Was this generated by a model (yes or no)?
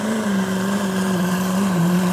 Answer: yes